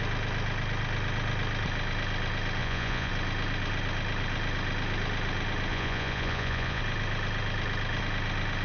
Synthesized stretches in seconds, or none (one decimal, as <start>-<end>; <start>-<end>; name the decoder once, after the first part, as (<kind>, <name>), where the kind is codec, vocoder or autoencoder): 2.6-3.1 (vocoder, Vocos); 5.7-6.8